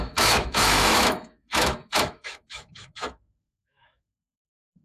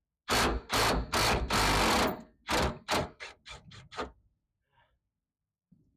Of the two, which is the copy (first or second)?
first